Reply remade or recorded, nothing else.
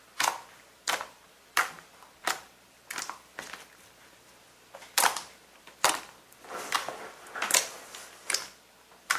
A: remade